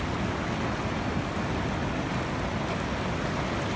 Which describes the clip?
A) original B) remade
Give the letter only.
A